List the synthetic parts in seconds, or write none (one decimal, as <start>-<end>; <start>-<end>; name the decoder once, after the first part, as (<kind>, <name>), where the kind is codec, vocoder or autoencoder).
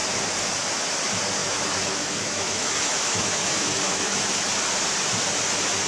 1.4-4.2 (autoencoder, DAC-VAE)